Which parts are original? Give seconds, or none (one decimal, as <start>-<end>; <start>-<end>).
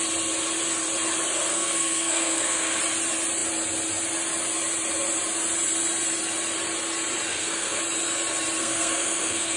0.0-1.5; 2.8-7.3; 7.8-8.6